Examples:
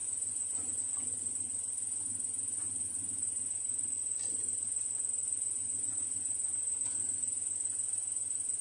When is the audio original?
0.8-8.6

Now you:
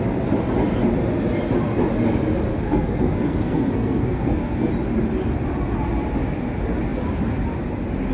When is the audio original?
0.0-2.5; 4.7-8.1

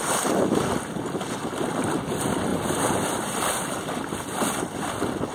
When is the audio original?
0.0-2.5; 4.6-5.3

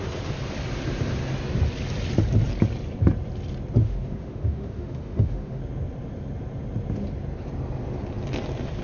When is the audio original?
0.0-3.8; 5.6-8.8

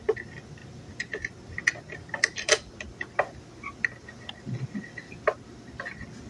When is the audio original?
0.0-6.3

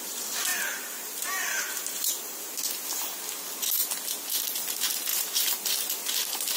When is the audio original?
0.0-0.5; 2.5-5.1; 5.6-6.6

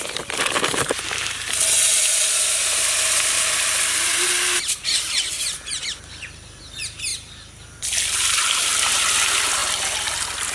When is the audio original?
0.0-10.5

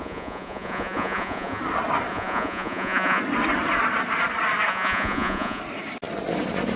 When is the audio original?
1.6-2.1; 3.2-4.7; 5.6-6.8